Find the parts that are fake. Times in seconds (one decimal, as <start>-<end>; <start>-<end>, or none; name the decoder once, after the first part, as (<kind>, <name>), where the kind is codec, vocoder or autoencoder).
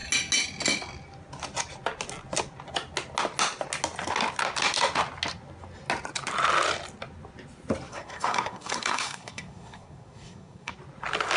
7.9-10.7 (codec, SNAC)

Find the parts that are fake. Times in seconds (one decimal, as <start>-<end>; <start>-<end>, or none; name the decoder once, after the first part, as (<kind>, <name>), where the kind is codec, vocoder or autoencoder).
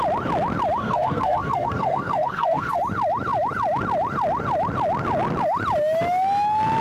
0.8-2.8 (codec, SNAC)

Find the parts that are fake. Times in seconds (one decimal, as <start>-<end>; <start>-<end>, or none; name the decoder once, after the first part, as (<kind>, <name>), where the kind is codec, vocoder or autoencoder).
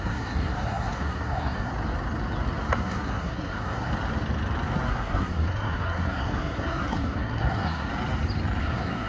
0.0-1.7 (codec, SNAC); 2.7-3.9; 4.9-7.9; 8.6-9.1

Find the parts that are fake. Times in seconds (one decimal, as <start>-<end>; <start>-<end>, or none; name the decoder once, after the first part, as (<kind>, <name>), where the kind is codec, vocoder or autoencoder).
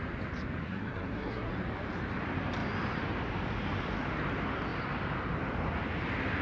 0.6-1.5 (codec, SNAC)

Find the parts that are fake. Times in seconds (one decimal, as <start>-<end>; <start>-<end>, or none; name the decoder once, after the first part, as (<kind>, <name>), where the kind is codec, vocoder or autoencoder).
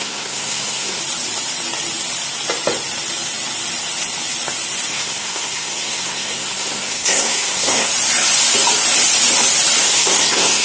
0.0-1.0 (codec, SNAC); 4.9-7.9; 9.8-10.6